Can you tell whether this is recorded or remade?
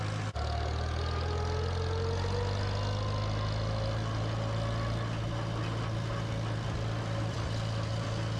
recorded